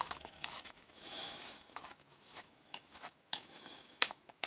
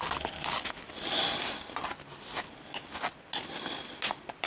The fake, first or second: first